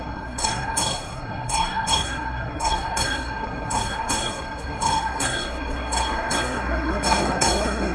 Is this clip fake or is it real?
fake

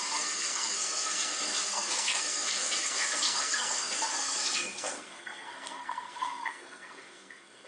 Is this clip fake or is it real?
fake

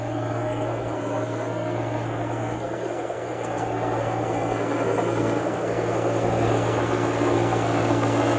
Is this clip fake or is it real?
fake